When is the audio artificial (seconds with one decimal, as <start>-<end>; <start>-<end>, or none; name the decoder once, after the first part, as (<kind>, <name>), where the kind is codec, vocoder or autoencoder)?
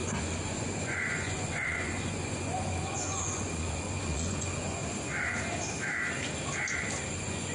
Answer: 0.0-4.8 (vocoder, Vocos); 7.1-7.5